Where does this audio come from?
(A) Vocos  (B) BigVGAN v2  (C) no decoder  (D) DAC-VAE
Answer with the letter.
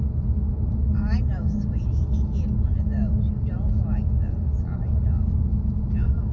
C